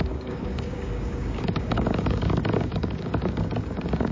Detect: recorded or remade remade